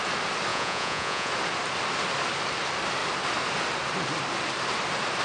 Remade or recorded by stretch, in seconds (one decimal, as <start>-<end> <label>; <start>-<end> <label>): 0.0-0.5 recorded; 0.5-1.3 remade; 1.3-5.2 recorded